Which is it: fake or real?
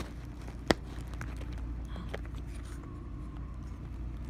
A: real